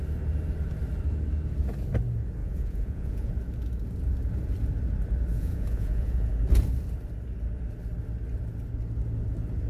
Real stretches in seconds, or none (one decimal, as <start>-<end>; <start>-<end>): 0.0-2.4; 3.3-5.3; 6.3-9.7